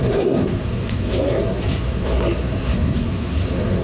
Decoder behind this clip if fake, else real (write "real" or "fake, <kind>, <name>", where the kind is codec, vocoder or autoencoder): fake, codec, SNAC